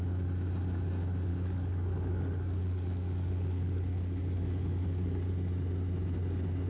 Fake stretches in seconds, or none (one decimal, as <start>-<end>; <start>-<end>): 1.3-5.3